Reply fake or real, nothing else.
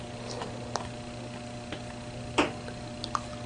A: real